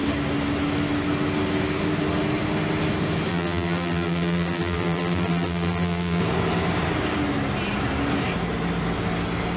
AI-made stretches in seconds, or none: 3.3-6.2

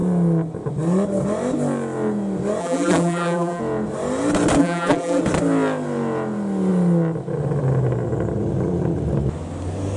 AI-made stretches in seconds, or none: 2.6-3.6; 4.6-5.2

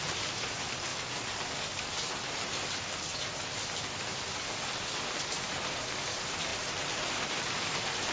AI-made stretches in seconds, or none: 0.0-0.9; 5.3-8.1

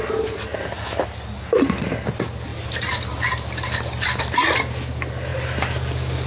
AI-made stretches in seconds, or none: 0.5-1.4

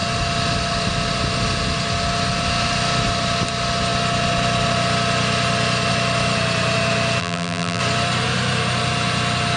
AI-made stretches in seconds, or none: 7.2-7.8

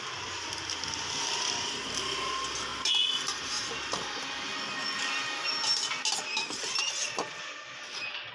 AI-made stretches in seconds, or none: none

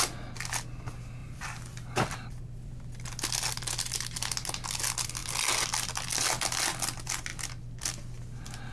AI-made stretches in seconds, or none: 1.2-2.7